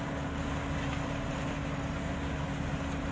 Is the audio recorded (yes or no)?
yes